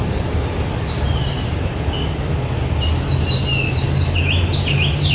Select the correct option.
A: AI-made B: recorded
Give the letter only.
B